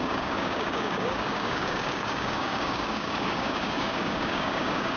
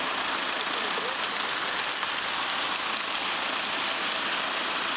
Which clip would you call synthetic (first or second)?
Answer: first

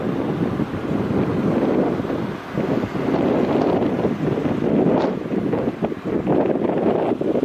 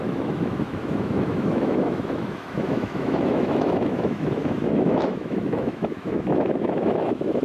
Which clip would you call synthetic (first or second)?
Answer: second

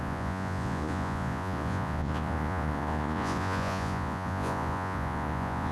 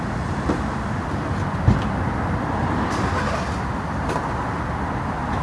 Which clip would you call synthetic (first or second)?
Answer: first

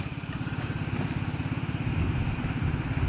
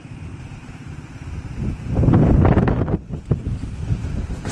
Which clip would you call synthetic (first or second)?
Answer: second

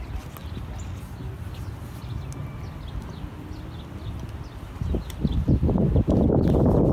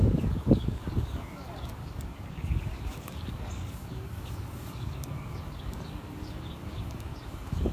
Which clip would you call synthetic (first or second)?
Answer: second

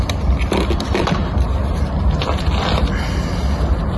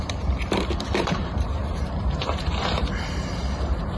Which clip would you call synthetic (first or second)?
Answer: second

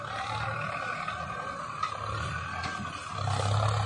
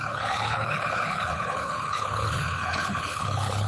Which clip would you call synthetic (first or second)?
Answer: second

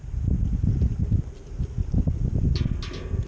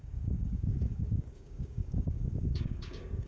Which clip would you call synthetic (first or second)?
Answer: second